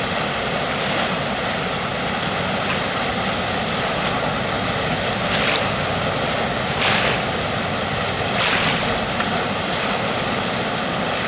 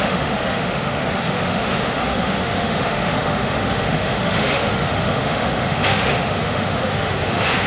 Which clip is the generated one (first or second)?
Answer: second